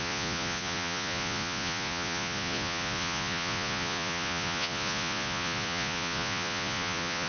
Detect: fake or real fake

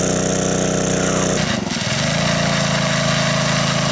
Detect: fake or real real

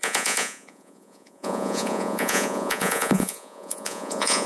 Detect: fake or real fake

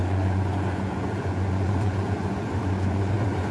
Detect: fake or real fake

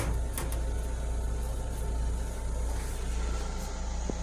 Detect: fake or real real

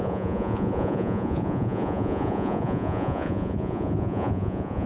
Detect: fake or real fake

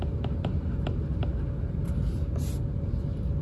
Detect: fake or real real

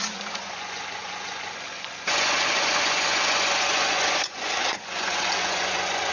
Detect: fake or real fake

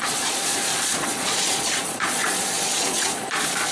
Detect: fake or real fake